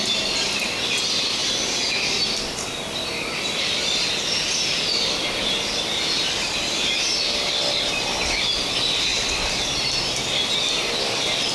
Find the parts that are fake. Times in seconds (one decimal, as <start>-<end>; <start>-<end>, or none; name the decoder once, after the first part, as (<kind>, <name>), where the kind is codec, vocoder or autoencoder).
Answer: none